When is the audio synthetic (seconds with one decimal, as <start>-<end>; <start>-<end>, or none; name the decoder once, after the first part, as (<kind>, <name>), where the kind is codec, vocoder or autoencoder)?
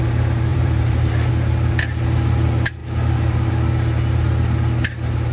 0.5-1.3 (vocoder, BigVGAN v2)